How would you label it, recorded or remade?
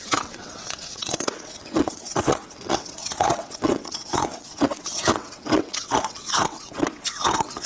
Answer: remade